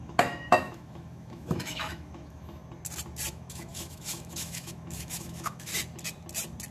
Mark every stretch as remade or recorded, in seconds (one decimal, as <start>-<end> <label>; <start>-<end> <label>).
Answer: 0.0-2.6 remade; 2.6-3.3 recorded; 3.3-5.7 remade; 5.7-6.7 recorded